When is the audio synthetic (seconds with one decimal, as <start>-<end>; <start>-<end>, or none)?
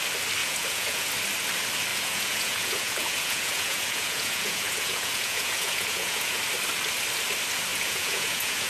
0.4-1.1; 1.9-6.4; 7.7-8.7